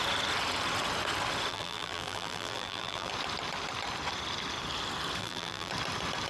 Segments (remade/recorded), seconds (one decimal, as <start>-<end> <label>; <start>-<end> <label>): 0.0-1.5 recorded; 1.5-3.1 remade; 3.1-5.2 recorded; 5.2-5.7 remade; 5.7-6.3 recorded